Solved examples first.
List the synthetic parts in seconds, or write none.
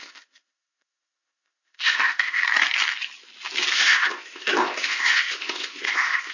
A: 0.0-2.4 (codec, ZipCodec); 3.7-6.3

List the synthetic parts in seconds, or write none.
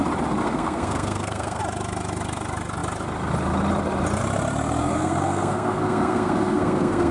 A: 0.4-1.6 (codec, SNAC); 4.8-7.1